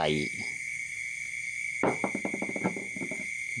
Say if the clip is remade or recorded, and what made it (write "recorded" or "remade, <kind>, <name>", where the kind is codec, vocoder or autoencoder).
recorded